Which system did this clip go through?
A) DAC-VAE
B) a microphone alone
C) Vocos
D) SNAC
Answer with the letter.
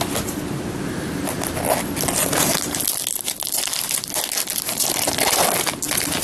B